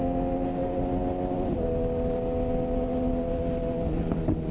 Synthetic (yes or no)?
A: no